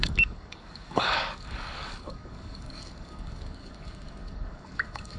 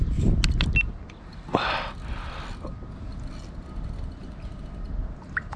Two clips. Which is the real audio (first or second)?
second